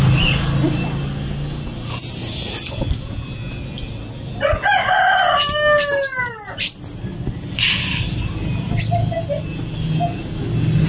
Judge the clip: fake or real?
real